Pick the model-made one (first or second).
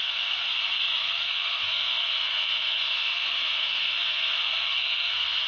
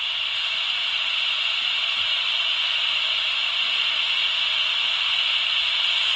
first